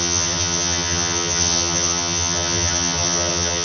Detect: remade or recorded remade